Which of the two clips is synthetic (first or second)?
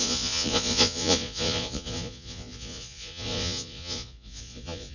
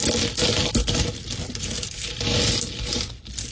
first